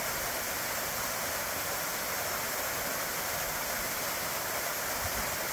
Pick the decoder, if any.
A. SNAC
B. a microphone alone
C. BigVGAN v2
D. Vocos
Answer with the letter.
B